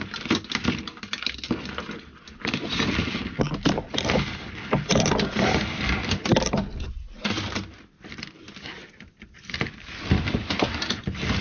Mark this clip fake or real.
real